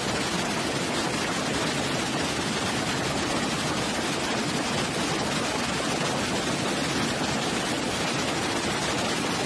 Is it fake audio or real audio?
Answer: real